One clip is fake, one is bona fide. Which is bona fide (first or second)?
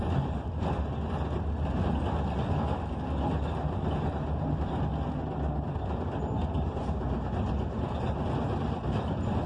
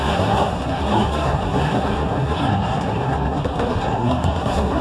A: first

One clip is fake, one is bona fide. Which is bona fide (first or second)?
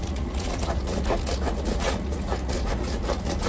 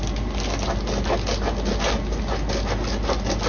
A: second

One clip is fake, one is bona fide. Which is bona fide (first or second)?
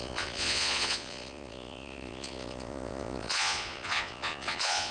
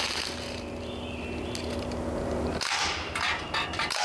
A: second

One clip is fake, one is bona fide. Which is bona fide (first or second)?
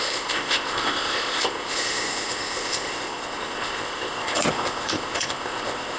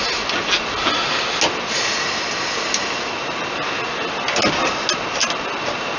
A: second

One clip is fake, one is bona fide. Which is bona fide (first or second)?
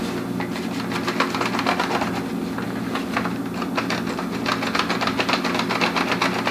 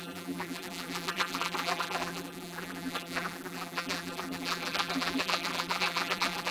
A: first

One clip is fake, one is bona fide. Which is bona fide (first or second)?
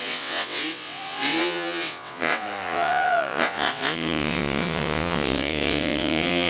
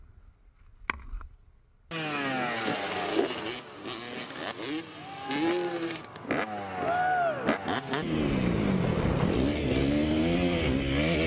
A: second